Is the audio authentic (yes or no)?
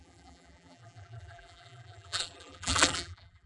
no